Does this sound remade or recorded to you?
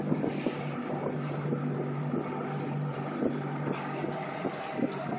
recorded